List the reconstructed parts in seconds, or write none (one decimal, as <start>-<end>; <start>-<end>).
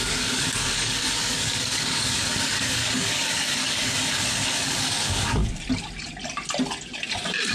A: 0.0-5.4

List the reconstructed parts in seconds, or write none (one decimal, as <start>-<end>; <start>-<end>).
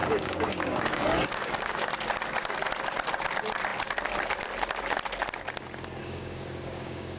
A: 0.0-1.9; 6.0-7.2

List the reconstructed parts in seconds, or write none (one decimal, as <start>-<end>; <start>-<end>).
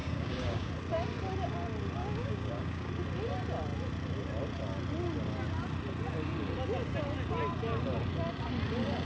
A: 0.0-0.7; 2.0-2.9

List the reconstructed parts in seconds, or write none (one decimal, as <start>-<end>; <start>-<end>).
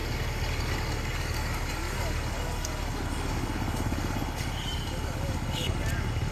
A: 0.0-6.3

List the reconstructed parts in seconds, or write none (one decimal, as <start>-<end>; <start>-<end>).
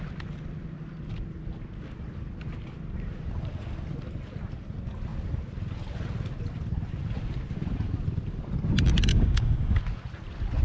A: 9.1-9.8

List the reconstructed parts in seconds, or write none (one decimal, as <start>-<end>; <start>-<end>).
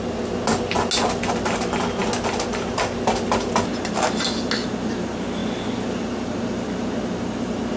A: none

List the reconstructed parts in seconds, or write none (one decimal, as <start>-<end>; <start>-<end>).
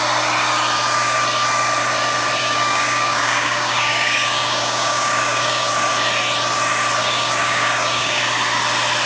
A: 2.4-5.7; 7.0-8.2